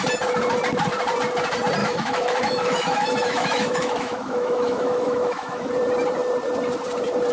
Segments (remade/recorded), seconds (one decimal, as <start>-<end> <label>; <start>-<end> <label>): 0.0-1.8 recorded; 1.8-5.7 remade; 5.7-7.3 recorded